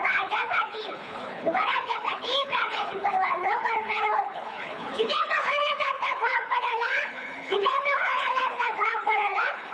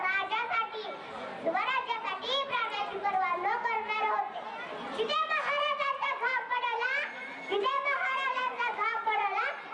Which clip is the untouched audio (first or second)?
second